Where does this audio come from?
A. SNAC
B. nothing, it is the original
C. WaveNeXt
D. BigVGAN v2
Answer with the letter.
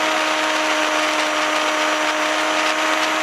B